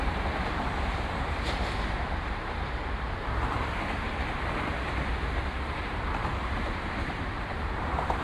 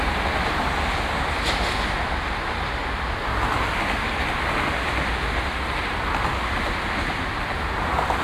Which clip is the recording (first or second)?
second